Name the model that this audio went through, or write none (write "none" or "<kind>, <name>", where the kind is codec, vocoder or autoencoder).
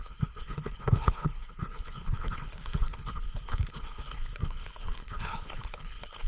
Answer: codec, HILCodec